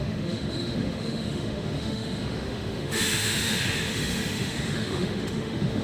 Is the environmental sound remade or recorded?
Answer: remade